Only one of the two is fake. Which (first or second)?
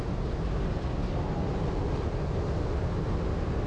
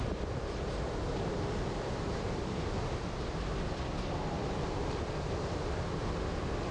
second